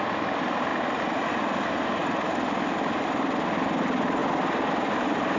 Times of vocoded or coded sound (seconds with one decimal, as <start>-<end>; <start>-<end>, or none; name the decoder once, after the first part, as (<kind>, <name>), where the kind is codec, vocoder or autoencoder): none